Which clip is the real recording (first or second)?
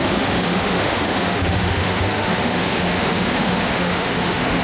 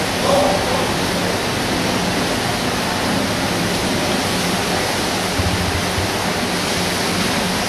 second